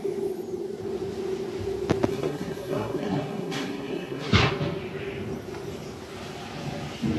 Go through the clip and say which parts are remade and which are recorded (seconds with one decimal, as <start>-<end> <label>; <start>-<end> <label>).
0.0-2.1 recorded; 2.1-4.5 remade; 4.5-7.2 recorded